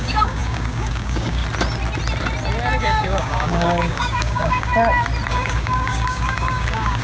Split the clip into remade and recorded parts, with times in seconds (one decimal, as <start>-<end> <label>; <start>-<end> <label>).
0.0-1.4 remade; 1.4-2.8 recorded; 2.8-4.7 remade; 4.7-5.3 recorded; 5.3-7.0 remade

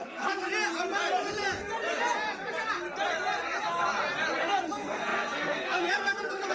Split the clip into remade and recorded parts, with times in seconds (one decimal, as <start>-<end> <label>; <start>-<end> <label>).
0.0-0.5 remade; 0.5-4.4 recorded; 4.4-6.5 remade